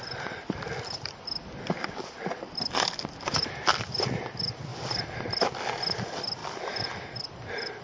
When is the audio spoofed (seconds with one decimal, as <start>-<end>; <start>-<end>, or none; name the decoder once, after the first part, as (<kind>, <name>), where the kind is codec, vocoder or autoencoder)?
0.0-6.4 (vocoder, BigVGAN v2)